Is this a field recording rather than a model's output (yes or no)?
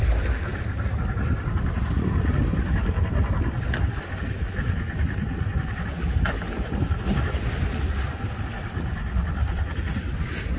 yes